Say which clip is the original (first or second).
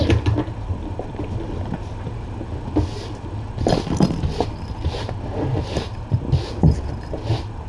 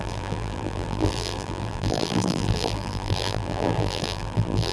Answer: first